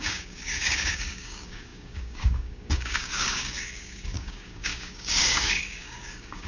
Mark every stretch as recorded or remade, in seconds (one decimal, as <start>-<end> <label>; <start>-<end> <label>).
0.0-6.5 remade